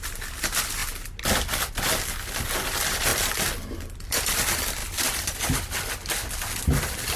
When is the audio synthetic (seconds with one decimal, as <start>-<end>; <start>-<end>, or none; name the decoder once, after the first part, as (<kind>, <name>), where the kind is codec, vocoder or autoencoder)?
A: 0.0-0.8 (vocoder, BigVGAN v2); 2.6-4.8; 6.6-7.2

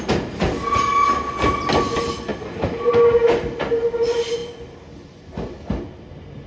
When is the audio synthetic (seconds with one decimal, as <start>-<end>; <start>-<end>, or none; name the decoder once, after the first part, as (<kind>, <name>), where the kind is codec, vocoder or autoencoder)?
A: 2.3-2.9 (vocoder, BigVGAN v2)

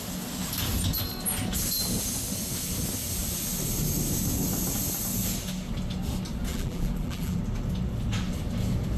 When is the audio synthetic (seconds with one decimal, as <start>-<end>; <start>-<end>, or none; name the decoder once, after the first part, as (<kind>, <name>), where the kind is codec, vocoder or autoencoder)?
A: 6.5-7.4 (vocoder, BigVGAN v2)

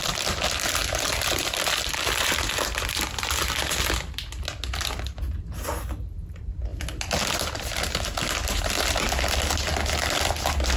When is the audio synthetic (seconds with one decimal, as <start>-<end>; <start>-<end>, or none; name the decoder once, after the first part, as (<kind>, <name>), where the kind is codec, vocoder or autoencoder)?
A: 0.8-3.8 (vocoder, BigVGAN v2); 6.7-7.4

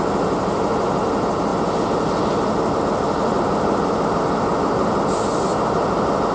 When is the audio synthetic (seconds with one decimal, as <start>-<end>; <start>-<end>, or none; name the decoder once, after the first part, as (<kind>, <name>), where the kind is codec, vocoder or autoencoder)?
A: none

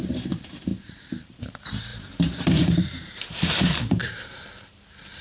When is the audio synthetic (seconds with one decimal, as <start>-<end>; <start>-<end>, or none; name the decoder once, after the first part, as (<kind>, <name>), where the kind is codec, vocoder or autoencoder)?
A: 0.0-5.2 (vocoder, BigVGAN v2)

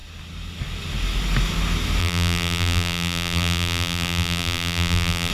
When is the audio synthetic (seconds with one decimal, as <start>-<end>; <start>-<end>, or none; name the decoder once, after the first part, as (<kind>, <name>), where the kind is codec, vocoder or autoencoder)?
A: 2.0-5.3 (vocoder, BigVGAN v2)